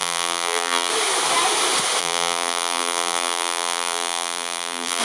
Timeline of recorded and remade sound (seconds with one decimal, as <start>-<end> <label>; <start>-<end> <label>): 0.0-0.9 remade; 0.9-2.0 recorded; 2.0-5.0 remade